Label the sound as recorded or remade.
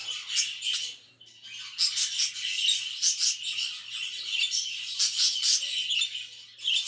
recorded